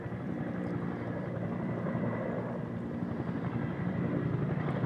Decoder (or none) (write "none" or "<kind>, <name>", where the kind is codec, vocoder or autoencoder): vocoder, BigVGAN v2